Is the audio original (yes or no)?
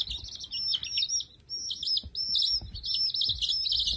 yes